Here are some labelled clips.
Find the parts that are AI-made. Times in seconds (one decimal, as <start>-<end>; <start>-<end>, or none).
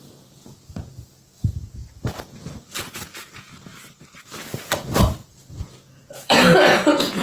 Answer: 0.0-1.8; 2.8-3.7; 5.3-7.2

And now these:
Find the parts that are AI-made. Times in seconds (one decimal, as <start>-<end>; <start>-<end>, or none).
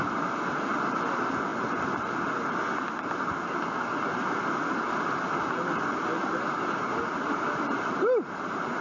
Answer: none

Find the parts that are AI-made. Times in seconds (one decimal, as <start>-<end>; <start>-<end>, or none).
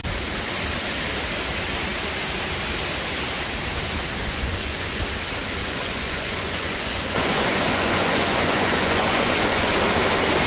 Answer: 4.2-5.0; 5.6-9.7